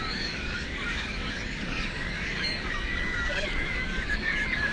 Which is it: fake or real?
fake